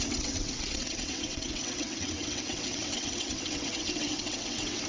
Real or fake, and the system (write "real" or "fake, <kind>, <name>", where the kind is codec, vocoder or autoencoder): fake, vocoder, WaveNeXt